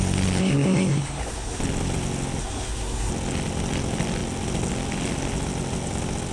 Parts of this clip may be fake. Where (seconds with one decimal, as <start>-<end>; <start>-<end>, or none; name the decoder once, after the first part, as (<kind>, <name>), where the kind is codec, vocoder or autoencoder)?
0.4-1.6 (codec, SNAC); 2.4-3.1